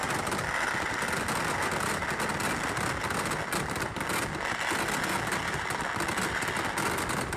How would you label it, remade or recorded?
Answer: recorded